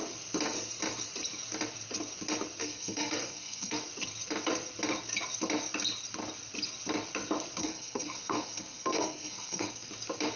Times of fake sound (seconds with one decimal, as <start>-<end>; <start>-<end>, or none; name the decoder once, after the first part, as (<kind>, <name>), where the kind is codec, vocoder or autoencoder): 2.6-3.8 (codec, SNAC); 7.6-9.9